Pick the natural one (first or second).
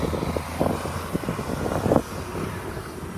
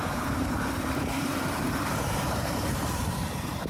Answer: first